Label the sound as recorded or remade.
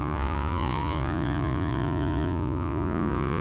remade